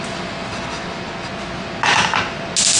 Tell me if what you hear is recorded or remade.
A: recorded